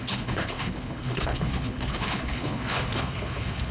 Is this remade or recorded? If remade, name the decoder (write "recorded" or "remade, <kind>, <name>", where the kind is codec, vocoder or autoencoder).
remade, codec, HILCodec